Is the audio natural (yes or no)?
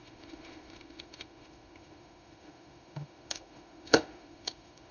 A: no